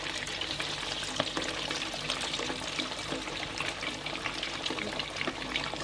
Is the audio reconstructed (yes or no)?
yes